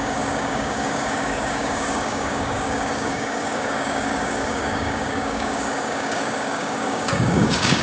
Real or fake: fake